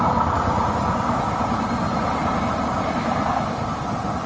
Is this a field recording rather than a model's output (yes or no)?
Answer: yes